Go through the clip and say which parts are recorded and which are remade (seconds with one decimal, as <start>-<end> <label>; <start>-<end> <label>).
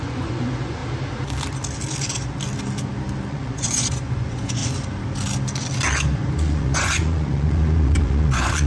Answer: 0.0-0.8 remade; 0.8-3.3 recorded; 3.3-4.6 remade; 4.6-6.4 recorded; 6.4-8.7 remade